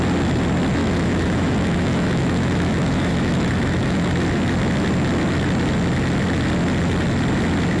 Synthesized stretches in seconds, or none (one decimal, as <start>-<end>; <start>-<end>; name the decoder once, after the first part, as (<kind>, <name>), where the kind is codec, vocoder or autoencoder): 0.8-4.1 (autoencoder, DAC-VAE)